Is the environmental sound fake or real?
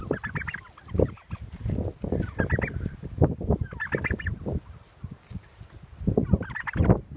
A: real